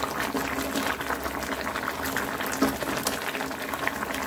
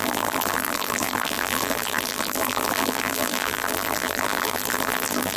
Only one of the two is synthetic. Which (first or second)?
second